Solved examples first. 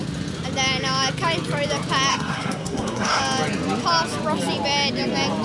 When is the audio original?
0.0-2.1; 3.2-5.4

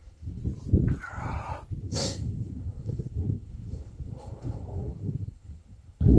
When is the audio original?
0.4-1.8

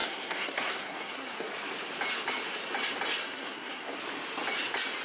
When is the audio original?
1.5-3.2; 4.0-5.0